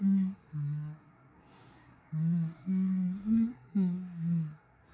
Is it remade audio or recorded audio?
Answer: remade